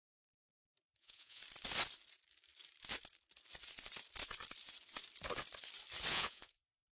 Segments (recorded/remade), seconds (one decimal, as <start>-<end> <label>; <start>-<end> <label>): 0.0-0.9 recorded; 0.9-1.4 remade; 1.4-6.1 recorded; 6.1-6.9 remade